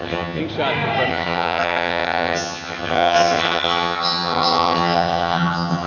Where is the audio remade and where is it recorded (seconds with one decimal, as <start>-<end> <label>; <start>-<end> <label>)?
0.0-0.4 remade; 0.4-1.1 recorded; 1.1-5.9 remade